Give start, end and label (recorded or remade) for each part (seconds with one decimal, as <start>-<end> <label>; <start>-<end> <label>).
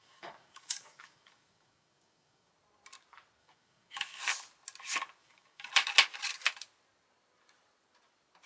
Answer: 0.0-2.5 remade; 2.5-3.4 recorded; 3.4-4.2 remade; 4.2-5.2 recorded; 5.2-5.7 remade; 5.7-8.5 recorded